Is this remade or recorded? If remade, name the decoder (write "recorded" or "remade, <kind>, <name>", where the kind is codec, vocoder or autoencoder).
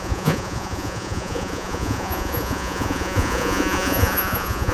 remade, vocoder, Vocos